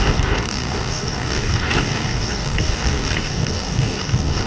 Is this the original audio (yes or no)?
no